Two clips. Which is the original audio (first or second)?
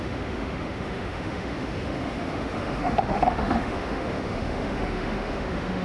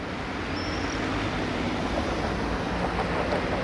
second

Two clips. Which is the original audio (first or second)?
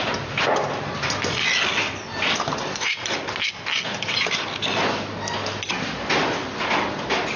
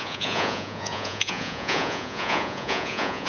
first